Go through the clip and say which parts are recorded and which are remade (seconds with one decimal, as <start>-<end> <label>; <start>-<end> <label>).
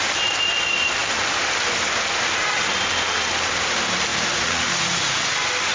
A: 0.0-4.1 recorded; 4.1-5.3 remade; 5.3-5.7 recorded